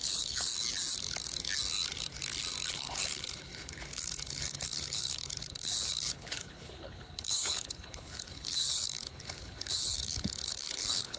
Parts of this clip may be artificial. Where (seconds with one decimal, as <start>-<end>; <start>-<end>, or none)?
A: 0.0-0.5; 2.7-11.2